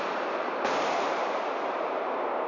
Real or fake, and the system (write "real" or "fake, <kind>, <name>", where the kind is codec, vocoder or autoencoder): fake, vocoder, BigVGAN v2